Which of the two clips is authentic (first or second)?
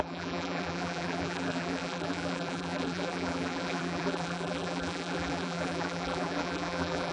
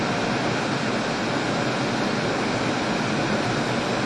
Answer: second